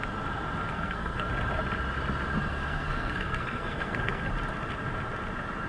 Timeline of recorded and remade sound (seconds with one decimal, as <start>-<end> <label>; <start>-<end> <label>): 0.0-0.7 recorded; 0.7-1.3 remade; 1.3-2.5 recorded; 2.5-4.3 remade; 4.3-5.7 recorded